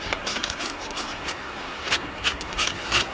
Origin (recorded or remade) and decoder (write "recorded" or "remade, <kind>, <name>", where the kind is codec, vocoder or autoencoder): remade, codec, SNAC